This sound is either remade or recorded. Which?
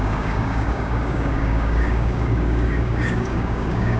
remade